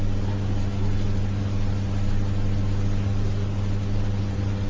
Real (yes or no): yes